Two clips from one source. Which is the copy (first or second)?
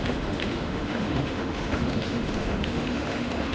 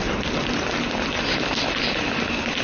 first